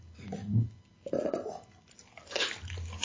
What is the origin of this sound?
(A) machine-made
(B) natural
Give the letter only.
B